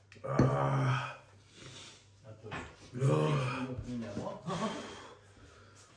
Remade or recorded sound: recorded